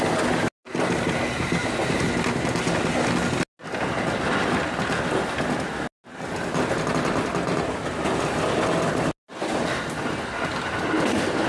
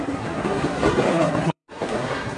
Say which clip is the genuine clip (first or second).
first